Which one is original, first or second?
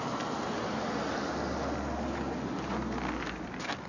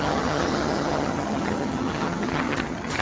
first